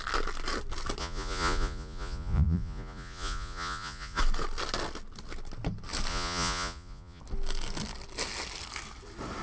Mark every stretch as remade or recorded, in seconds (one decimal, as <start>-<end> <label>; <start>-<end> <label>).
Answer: 0.0-1.0 recorded; 1.0-4.2 remade; 4.2-6.1 recorded; 6.1-7.2 remade; 7.2-9.4 recorded